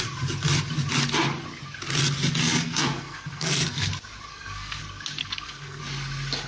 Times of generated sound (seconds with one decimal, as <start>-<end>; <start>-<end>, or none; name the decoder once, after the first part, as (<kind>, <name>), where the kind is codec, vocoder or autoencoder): 2.4-3.9 (codec, SNAC); 4.3-4.8; 5.2-5.8